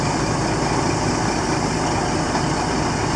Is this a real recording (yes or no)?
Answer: yes